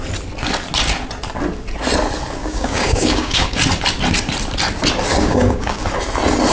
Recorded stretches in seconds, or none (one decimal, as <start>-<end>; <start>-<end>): 0.0-2.4; 3.6-5.1; 5.8-6.5